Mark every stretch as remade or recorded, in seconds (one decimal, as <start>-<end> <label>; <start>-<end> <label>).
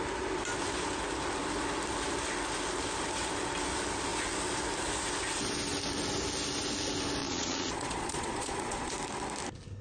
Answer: 0.0-7.2 recorded; 7.2-8.9 remade; 8.9-9.8 recorded